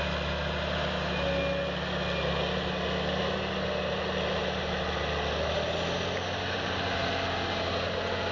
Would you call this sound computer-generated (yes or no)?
no